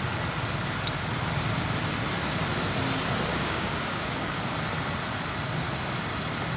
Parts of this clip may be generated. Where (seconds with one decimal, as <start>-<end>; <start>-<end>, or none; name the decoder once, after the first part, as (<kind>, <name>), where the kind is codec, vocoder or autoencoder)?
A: 3.3-4.4 (codec, DAC)